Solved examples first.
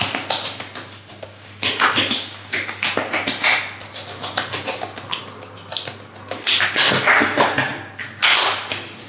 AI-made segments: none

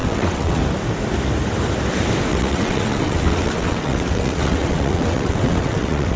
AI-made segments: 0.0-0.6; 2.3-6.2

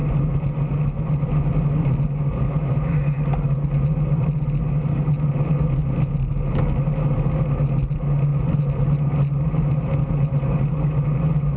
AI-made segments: none